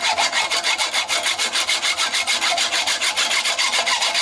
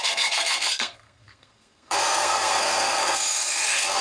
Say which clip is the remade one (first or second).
second